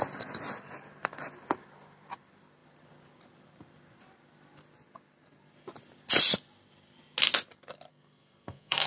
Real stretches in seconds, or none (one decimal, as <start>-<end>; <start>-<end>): 0.0-7.9